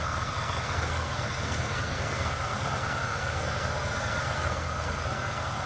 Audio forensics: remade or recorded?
remade